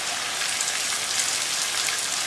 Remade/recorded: recorded